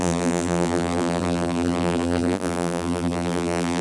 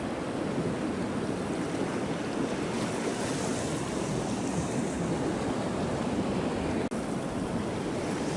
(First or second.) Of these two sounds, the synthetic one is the first